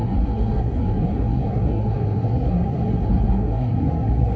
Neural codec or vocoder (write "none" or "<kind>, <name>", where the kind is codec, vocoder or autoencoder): codec, SNAC